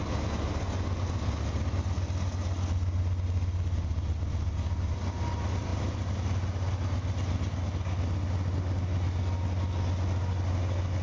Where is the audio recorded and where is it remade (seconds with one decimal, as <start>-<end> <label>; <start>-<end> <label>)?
0.0-11.0 recorded